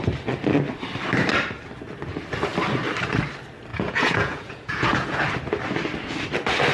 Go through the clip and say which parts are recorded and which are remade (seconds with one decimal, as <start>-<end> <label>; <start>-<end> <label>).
0.0-3.7 recorded; 3.7-5.2 remade; 5.2-6.7 recorded